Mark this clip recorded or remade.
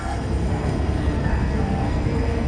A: remade